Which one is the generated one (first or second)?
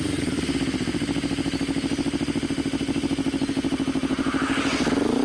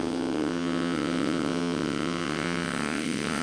second